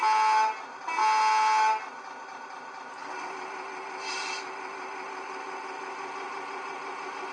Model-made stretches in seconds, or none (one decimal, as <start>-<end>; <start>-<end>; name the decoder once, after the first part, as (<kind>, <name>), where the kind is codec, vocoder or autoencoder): none